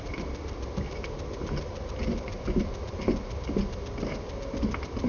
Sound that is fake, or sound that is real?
real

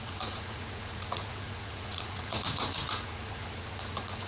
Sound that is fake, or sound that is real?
fake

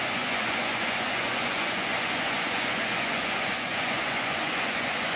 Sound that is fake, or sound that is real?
fake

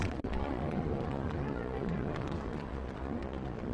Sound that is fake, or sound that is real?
fake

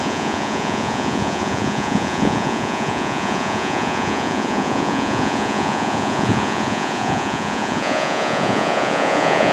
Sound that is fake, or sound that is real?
fake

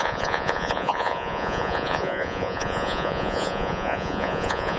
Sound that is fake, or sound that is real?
fake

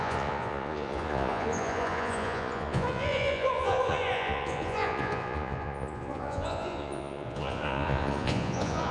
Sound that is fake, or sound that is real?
fake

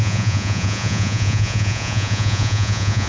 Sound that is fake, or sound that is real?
fake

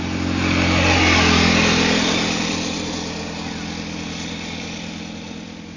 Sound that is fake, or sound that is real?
real